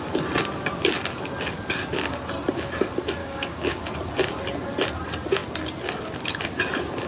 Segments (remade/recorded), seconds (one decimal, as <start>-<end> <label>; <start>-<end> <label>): 0.0-3.2 recorded; 3.2-3.8 remade; 3.8-7.1 recorded

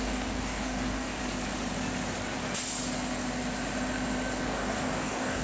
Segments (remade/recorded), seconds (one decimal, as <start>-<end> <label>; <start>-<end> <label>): 0.0-1.2 remade; 1.2-4.4 recorded; 4.4-5.4 remade

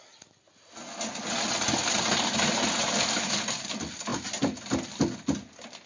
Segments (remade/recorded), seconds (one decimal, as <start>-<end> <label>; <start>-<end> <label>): 0.0-5.9 recorded

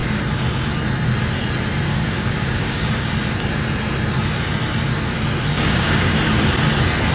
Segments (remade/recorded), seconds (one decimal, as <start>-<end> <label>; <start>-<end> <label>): 0.0-1.9 recorded; 1.9-3.1 remade; 3.1-5.5 recorded; 5.5-6.2 remade; 6.2-7.1 recorded

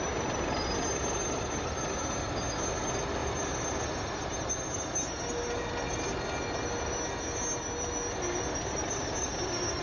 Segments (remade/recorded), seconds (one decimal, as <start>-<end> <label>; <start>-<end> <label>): 0.0-9.8 recorded